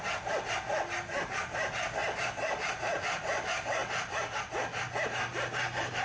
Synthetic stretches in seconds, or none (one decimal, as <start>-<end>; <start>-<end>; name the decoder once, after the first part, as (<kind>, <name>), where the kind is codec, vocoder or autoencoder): none